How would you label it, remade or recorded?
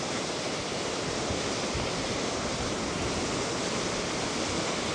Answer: recorded